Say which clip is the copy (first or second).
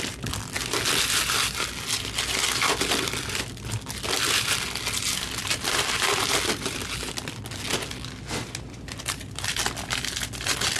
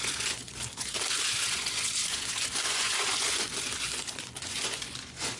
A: second